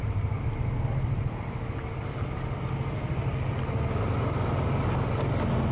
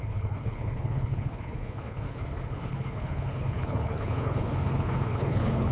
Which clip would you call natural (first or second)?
first